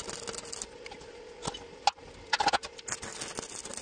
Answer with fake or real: real